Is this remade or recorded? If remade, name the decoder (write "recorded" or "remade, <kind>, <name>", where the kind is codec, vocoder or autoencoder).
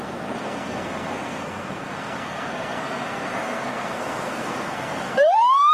remade, codec, SNAC